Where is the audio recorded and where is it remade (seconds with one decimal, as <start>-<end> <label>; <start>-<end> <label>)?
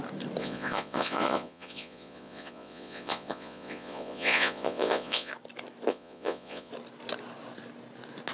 0.0-0.4 recorded; 0.4-5.3 remade; 5.3-5.9 recorded; 5.9-6.7 remade; 6.7-8.3 recorded